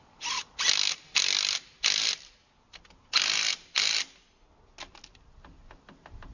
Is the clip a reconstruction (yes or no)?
no